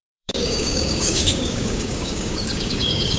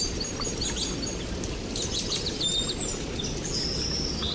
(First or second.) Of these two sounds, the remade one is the first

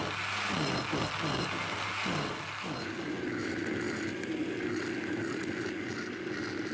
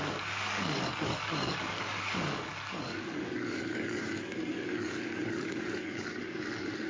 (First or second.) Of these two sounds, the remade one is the second